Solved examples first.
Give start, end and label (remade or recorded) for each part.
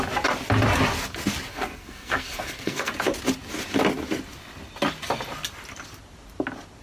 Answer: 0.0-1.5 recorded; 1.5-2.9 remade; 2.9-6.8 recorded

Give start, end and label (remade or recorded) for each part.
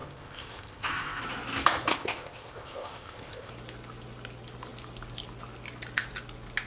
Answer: 0.0-1.2 remade; 1.2-1.9 recorded; 1.9-3.5 remade; 3.5-6.7 recorded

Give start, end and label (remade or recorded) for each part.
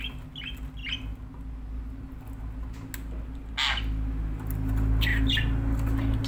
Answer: 0.0-6.3 recorded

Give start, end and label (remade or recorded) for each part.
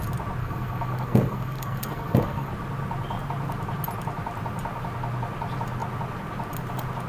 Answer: 0.0-0.4 recorded; 0.4-2.5 remade; 2.5-7.1 recorded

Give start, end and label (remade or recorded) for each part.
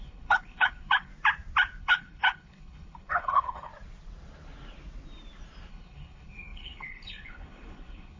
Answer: 0.0-1.1 remade; 1.1-1.8 recorded; 1.8-3.7 remade; 3.7-5.7 recorded; 5.7-8.2 remade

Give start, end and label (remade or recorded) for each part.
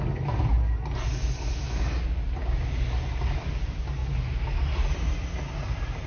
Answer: 0.0-6.1 recorded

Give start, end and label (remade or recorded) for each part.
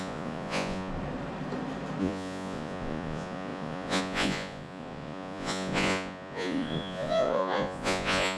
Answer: 0.0-0.9 remade; 0.9-2.0 recorded; 2.0-8.4 remade